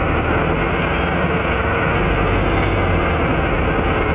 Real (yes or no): yes